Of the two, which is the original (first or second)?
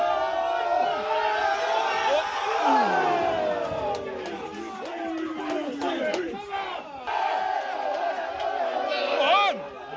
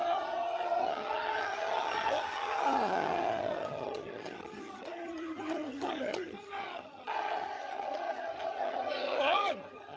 first